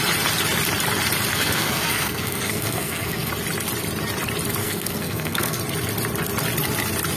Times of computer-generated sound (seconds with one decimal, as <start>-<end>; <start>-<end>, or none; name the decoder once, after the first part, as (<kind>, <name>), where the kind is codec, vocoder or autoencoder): 1.3-3.3 (codec, SNAC); 4.6-5.6